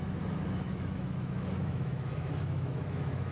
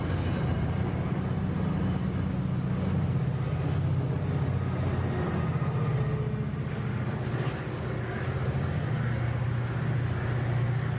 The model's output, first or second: first